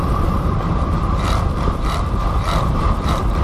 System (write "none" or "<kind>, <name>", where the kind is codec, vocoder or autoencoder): vocoder, BigVGAN v2